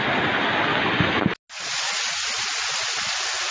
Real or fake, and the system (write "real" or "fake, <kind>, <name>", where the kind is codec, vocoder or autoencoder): real